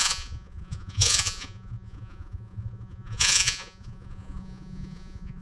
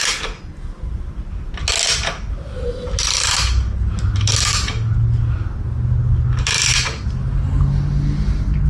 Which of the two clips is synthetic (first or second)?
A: first